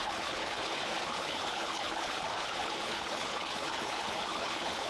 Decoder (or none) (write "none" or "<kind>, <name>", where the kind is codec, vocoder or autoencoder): codec, HILCodec